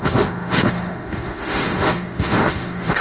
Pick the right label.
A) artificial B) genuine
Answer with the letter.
A